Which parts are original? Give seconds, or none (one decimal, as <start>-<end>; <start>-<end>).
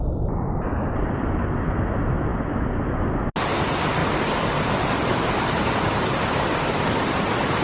0.0-7.6